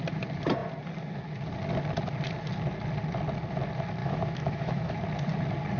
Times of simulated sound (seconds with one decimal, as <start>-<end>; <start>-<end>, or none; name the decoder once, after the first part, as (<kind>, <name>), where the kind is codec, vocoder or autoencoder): 4.0-5.0 (autoencoder, DAC-VAE)